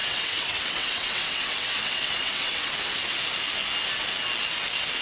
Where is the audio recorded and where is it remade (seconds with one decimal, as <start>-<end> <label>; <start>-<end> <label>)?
0.0-2.7 remade; 2.7-5.0 recorded